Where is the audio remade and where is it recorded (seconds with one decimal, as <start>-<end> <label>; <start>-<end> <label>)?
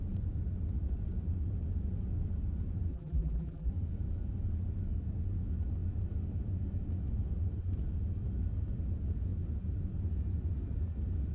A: 0.0-2.9 recorded; 2.9-3.7 remade; 3.7-11.3 recorded